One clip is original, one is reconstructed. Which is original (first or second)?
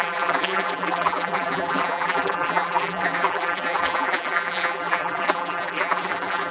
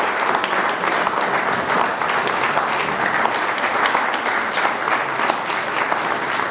second